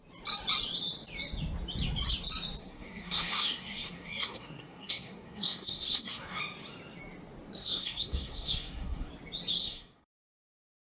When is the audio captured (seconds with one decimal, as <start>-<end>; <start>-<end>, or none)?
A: 0.0-2.6; 6.4-7.5; 9.1-9.6